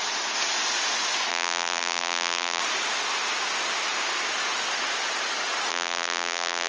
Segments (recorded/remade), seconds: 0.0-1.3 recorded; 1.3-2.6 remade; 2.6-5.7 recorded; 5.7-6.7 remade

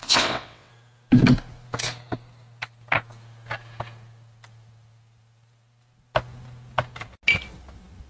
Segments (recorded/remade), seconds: 0.0-0.7 remade; 0.7-8.1 recorded

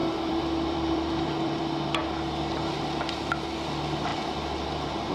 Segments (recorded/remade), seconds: 0.0-1.6 remade; 1.6-5.1 recorded

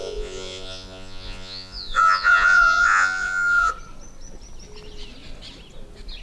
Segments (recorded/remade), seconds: 0.0-3.7 remade; 3.7-6.2 recorded

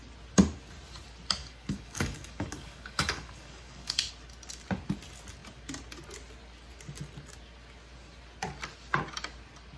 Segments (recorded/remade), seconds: 0.0-1.4 recorded; 1.4-4.1 remade; 4.1-9.8 recorded

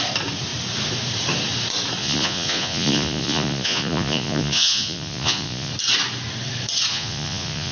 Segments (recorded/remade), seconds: 0.0-2.0 recorded; 2.0-5.7 remade; 5.7-6.9 recorded; 6.9-7.7 remade

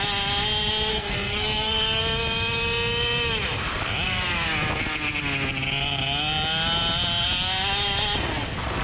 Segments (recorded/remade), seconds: 0.0-0.9 recorded; 0.9-2.0 remade; 2.0-8.8 recorded

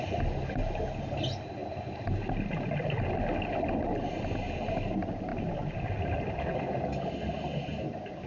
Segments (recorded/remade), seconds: 0.0-8.3 recorded